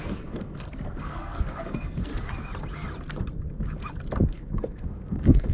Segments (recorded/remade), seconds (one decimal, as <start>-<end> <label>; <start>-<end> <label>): 0.0-2.1 remade; 2.1-4.3 recorded; 4.3-5.5 remade